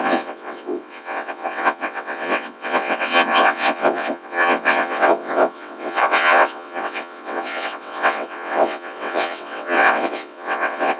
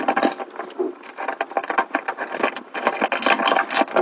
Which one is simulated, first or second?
first